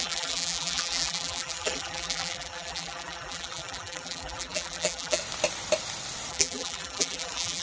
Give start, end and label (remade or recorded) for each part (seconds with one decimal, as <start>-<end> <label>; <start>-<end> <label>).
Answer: 0.0-5.2 remade; 5.2-6.3 recorded; 6.3-7.6 remade